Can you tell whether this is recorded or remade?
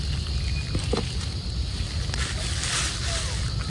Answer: recorded